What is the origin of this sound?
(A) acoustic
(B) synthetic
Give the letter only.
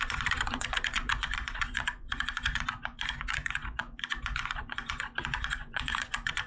B